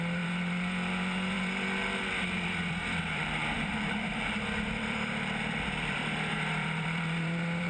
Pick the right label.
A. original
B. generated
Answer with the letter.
B